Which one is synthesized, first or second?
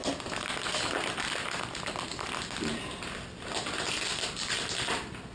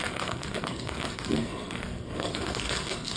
second